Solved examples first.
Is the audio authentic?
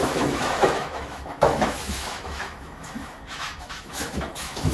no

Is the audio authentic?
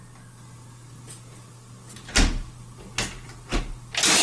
yes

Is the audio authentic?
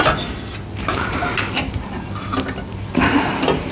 yes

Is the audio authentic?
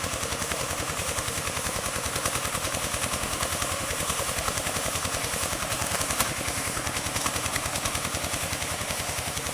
no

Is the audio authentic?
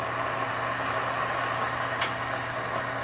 yes